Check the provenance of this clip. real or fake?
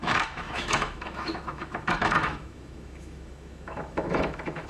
fake